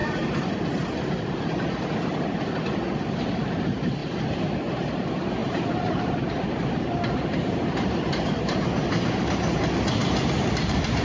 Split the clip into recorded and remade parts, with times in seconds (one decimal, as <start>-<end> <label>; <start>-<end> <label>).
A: 0.0-0.5 remade; 0.5-5.4 recorded; 5.4-9.6 remade; 9.6-11.0 recorded